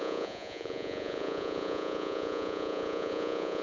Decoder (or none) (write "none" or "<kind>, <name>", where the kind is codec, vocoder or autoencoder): vocoder, Vocos